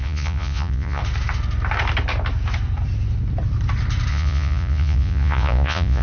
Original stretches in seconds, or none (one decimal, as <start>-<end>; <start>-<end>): 1.0-4.1